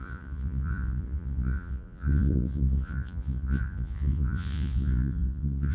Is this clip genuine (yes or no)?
no